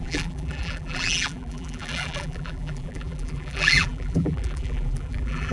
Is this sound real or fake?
fake